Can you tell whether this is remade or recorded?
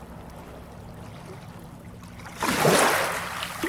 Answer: recorded